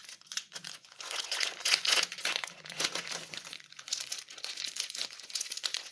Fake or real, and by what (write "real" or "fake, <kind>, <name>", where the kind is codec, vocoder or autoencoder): fake, vocoder, Vocos